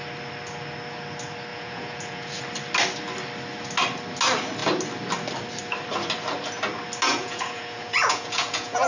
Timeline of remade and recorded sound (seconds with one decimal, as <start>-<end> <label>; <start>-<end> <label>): 0.0-1.5 recorded; 1.5-2.4 remade; 2.4-7.2 recorded; 7.2-8.9 remade